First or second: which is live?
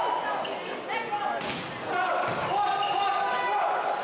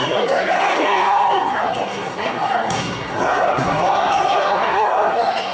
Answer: first